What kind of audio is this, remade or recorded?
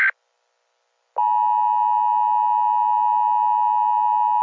recorded